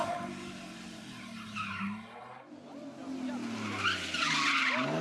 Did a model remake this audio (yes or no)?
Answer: no